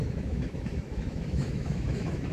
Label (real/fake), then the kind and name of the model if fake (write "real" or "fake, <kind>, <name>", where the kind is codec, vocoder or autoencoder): fake, autoencoder, DAC-VAE